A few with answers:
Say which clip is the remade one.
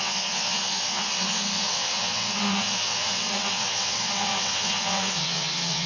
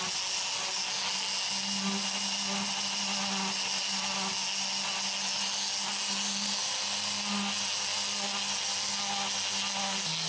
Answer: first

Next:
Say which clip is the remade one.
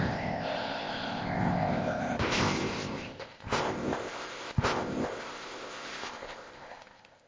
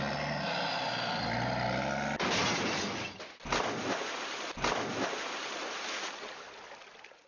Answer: first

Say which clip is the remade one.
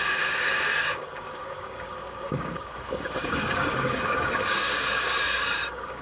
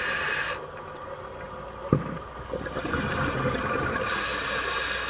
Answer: first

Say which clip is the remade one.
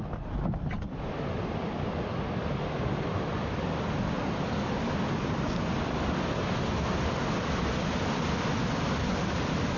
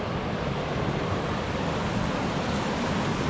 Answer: second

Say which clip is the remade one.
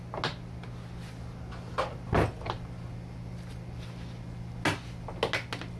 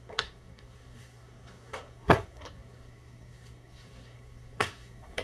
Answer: second